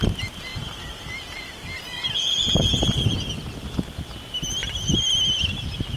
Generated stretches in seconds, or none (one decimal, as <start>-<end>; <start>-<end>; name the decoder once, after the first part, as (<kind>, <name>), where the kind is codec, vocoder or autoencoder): 0.5-1.8 (vocoder, BigVGAN v2); 4.6-5.1

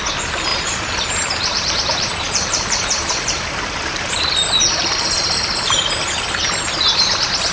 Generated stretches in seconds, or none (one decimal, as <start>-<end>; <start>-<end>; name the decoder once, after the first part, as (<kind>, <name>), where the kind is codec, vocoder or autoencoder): 0.5-4.2 (vocoder, BigVGAN v2)

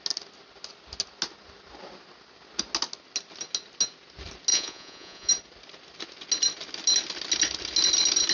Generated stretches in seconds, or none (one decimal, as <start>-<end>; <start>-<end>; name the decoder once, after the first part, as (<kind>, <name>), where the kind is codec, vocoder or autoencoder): 4.5-5.3 (vocoder, Vocos)

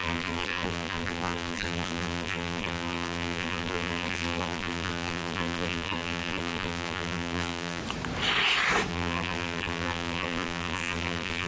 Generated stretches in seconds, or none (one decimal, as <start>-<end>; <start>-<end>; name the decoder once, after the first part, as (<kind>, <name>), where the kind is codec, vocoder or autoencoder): 0.0-7.8 (vocoder, BigVGAN v2); 8.9-11.5

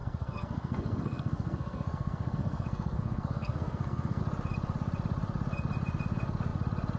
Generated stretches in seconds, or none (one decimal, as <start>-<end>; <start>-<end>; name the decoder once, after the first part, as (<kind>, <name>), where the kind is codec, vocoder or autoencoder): 0.0-4.2 (codec, SNAC)